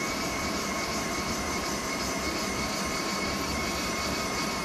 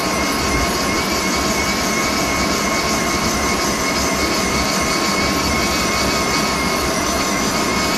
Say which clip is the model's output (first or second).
first